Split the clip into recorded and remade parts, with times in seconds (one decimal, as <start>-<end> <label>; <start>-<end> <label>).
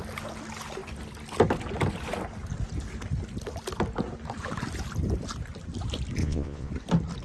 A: 0.0-6.2 recorded; 6.2-6.7 remade; 6.7-7.2 recorded